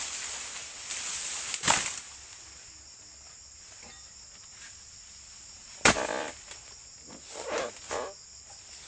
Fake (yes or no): no